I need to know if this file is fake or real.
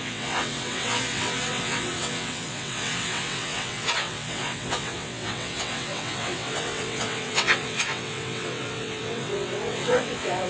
fake